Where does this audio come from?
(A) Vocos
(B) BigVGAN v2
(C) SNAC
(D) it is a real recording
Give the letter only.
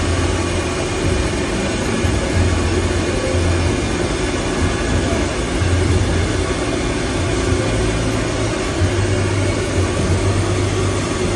D